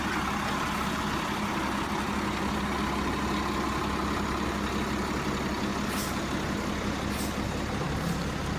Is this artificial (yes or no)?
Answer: no